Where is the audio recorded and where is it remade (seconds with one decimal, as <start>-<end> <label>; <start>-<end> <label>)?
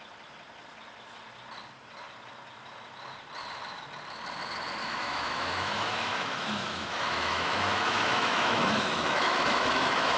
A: 0.0-4.8 recorded; 4.8-10.2 remade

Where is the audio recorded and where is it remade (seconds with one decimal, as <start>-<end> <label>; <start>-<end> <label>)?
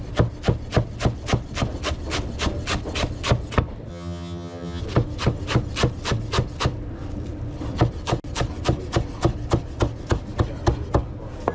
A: 0.0-3.9 recorded; 3.9-4.8 remade; 4.8-11.5 recorded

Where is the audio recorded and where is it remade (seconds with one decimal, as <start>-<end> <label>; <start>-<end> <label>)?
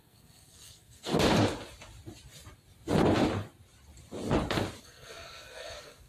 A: 0.0-1.1 remade; 1.1-4.8 recorded; 4.8-6.1 remade